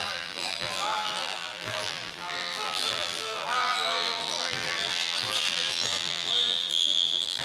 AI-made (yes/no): yes